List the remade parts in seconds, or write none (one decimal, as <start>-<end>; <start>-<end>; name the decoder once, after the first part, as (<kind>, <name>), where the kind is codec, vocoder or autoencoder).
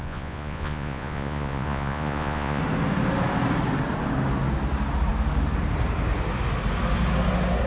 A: 0.0-2.6 (vocoder, Vocos)